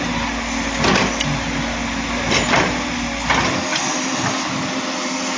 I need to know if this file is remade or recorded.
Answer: recorded